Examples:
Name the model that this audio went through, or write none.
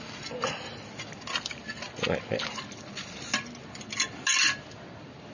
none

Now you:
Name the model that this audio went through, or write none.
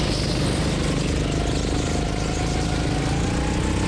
none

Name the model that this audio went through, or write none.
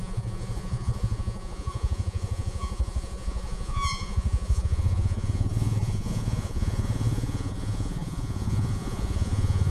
vocoder, Vocos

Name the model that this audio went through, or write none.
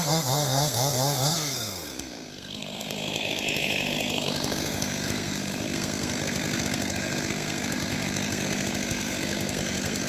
codec, SNAC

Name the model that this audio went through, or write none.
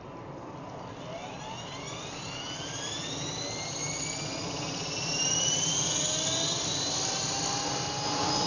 none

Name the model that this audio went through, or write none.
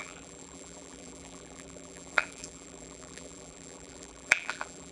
vocoder, BigVGAN v2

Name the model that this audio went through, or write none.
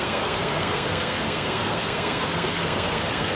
codec, SNAC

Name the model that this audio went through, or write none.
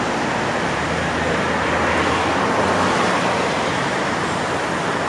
none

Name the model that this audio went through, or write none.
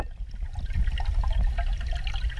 none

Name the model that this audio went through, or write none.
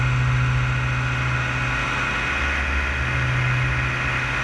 none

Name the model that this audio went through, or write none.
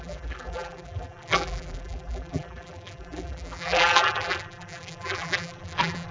vocoder, BigVGAN v2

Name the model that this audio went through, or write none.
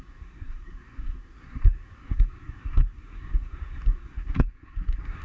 codec, SNAC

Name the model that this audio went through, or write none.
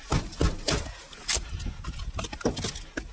none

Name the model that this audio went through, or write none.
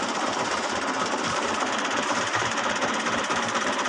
vocoder, BigVGAN v2